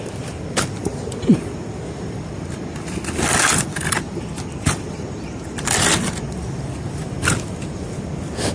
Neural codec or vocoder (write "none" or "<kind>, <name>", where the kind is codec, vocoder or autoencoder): none